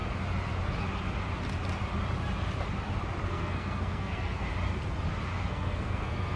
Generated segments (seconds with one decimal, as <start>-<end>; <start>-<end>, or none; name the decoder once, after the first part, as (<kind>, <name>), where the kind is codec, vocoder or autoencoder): 3.3-4.4 (codec, SNAC); 5.5-6.4